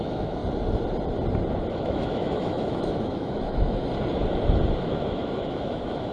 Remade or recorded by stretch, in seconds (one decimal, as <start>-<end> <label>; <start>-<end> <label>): 0.0-0.4 remade; 0.4-1.7 recorded; 1.7-3.9 remade; 3.9-4.8 recorded; 4.8-6.1 remade